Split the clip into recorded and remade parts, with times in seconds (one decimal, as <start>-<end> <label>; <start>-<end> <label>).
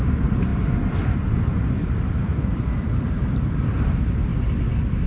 0.0-0.5 remade; 0.5-1.0 recorded; 1.0-4.3 remade; 4.3-5.1 recorded